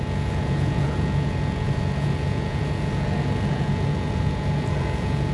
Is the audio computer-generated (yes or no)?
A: yes